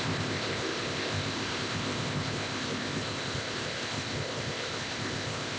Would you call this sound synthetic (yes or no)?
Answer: yes